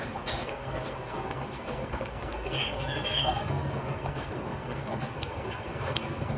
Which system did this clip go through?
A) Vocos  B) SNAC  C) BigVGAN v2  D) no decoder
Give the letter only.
B